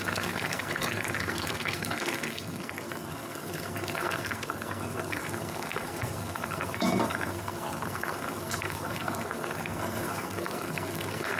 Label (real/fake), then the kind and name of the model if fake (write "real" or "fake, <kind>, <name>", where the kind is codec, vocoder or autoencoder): fake, codec, SNAC